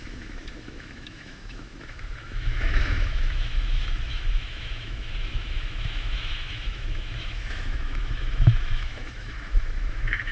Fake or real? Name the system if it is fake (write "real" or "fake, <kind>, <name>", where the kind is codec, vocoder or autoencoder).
fake, autoencoder, DAC-VAE